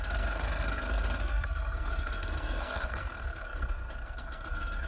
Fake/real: fake